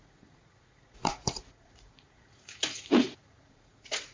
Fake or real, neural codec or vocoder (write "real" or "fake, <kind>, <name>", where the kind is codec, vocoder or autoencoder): fake, vocoder, Vocos